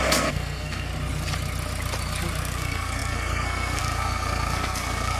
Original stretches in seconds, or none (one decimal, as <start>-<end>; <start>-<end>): 0.9-2.4